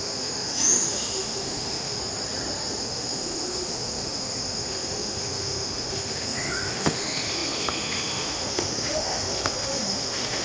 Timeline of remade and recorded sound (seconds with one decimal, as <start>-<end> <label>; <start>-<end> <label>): 0.0-2.0 remade; 2.0-2.8 recorded; 2.8-10.4 remade